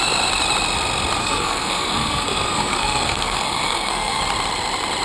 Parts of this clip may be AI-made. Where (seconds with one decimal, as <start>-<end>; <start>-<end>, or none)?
1.2-4.2